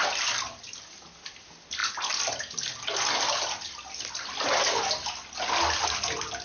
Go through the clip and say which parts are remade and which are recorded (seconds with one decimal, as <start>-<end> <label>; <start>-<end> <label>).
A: 0.0-6.4 recorded